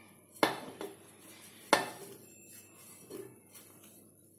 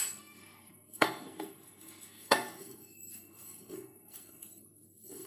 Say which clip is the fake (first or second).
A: second